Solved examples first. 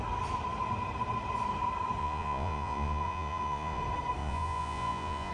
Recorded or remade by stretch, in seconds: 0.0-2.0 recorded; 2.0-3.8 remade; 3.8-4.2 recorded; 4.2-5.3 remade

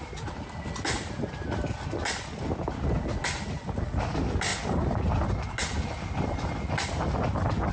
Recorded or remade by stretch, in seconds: 0.0-7.7 recorded

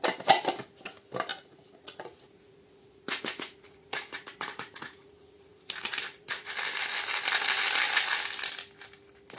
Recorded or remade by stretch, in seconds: 0.0-1.3 recorded; 1.3-6.5 remade; 6.5-9.4 recorded